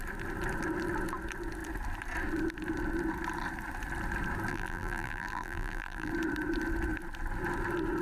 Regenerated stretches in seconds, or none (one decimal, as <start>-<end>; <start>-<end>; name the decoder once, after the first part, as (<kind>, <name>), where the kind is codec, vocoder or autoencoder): 4.5-6.1 (vocoder, BigVGAN v2)